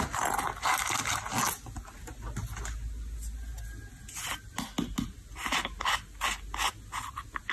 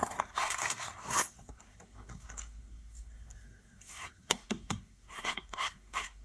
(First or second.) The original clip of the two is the first